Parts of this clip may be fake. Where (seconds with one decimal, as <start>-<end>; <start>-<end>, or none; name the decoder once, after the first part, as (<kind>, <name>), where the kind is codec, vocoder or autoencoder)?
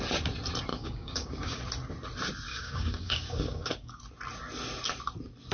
0.7-1.6 (codec, DAC); 2.5-4.0